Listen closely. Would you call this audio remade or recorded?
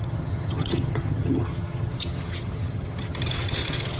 remade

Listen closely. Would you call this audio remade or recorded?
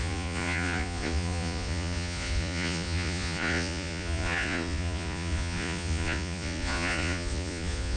remade